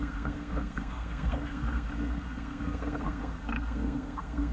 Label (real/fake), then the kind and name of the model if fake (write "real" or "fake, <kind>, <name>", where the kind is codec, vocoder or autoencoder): fake, codec, SNAC